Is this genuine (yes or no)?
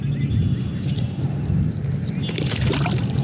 yes